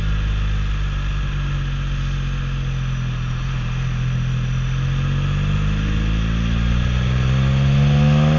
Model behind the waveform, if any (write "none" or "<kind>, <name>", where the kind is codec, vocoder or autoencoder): none